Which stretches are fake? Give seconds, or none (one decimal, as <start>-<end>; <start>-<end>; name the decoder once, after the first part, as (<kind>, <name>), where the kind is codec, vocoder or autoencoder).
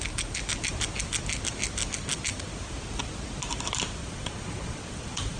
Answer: 4.0-5.4 (vocoder, Vocos)